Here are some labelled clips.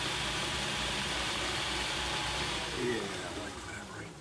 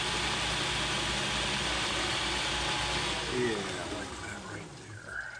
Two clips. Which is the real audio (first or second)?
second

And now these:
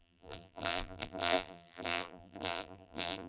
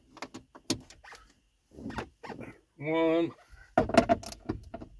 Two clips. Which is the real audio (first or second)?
second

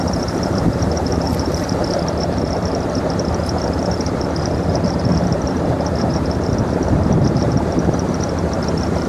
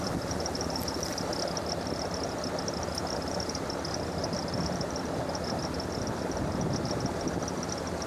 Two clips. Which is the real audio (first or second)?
second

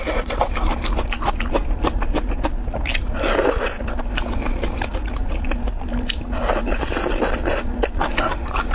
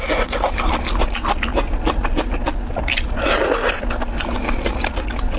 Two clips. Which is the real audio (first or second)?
second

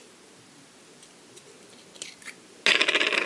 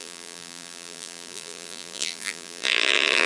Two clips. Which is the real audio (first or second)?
first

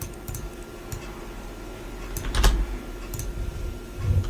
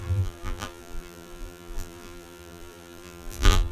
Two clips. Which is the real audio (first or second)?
first